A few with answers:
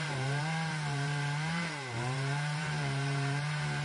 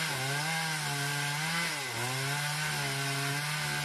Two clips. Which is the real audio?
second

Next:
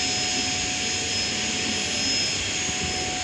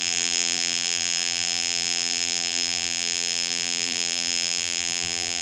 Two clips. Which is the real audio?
first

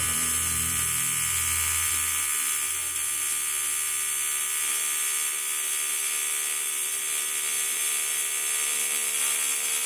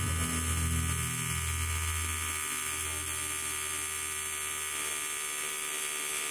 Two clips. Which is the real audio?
second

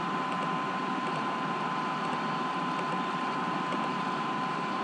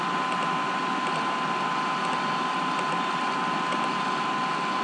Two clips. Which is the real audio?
second